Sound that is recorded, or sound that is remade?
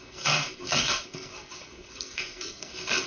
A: remade